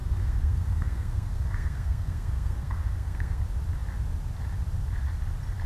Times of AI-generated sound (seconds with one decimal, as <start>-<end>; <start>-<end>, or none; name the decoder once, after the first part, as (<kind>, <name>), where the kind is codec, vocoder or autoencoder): 0.0-3.4 (codec, SNAC)